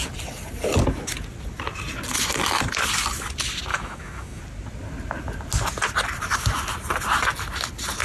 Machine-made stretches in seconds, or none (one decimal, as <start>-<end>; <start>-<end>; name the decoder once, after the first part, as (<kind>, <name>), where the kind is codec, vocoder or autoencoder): 3.7-4.4 (autoencoder, DAC-VAE)